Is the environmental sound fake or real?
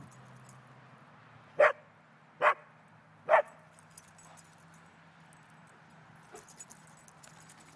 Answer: real